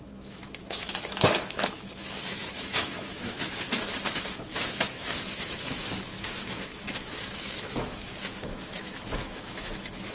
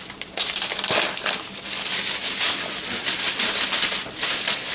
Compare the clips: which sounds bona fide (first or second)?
second